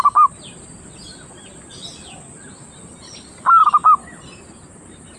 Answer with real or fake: real